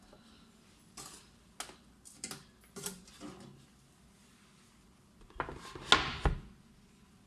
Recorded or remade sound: recorded